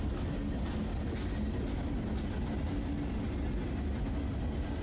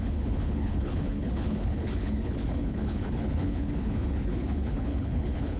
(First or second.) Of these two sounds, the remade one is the second